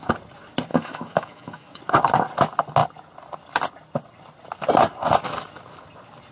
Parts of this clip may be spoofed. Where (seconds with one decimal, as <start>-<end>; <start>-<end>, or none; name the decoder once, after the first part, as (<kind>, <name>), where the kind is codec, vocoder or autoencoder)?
0.7-1.8 (autoencoder, DAC-VAE)